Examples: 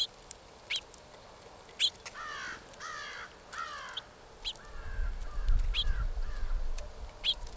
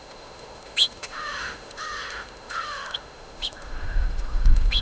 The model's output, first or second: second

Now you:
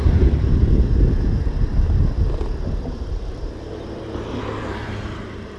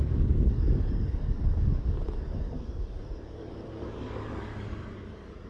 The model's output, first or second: second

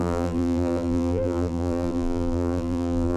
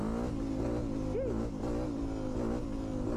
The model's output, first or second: first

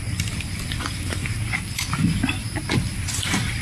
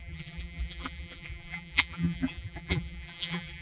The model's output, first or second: second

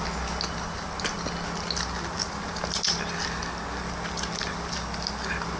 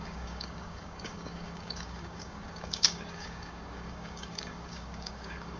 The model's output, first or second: second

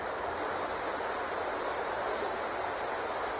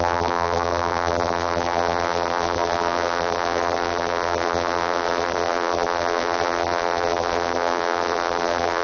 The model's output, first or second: second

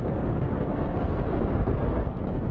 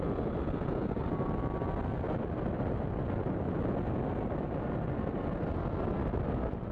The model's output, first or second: first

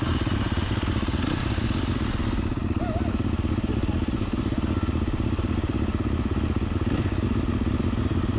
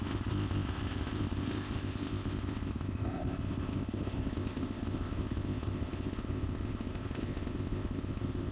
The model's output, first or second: second